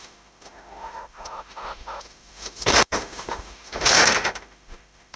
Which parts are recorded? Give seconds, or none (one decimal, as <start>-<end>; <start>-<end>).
none